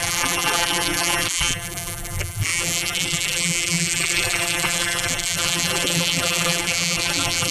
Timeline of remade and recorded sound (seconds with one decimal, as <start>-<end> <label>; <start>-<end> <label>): 0.0-7.5 remade